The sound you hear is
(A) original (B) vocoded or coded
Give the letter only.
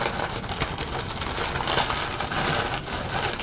A